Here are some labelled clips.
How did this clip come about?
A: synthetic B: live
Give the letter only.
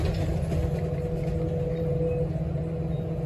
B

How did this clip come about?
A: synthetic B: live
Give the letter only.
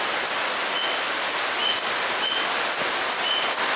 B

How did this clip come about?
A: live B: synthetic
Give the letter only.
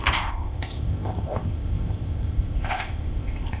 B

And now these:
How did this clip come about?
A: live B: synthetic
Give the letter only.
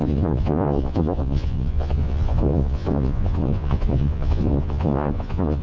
B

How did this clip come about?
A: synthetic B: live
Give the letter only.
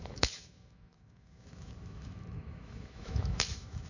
A